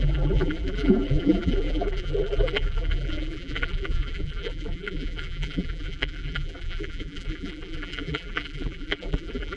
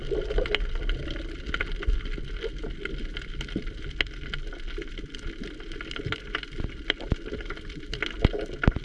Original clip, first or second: second